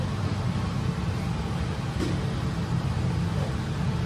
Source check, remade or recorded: recorded